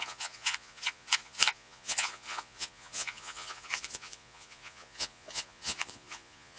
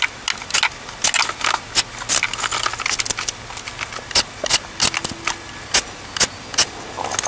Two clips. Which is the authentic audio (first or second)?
second